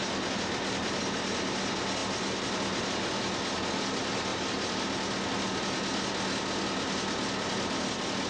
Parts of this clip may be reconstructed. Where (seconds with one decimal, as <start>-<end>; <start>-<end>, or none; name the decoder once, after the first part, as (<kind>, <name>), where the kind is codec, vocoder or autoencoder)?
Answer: none